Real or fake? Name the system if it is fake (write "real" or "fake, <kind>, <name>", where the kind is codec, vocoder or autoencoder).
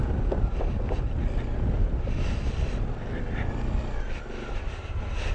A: real